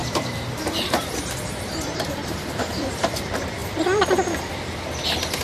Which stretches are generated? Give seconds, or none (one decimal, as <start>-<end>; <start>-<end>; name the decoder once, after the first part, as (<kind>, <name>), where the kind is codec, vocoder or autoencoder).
0.0-3.2 (vocoder, BigVGAN v2)